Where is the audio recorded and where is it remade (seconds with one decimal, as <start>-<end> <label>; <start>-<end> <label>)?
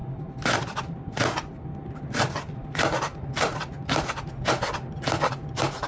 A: 0.0-5.9 recorded